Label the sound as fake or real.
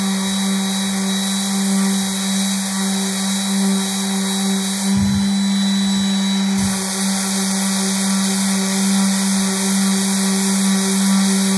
real